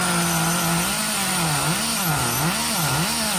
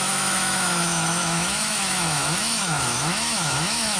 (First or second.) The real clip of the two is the first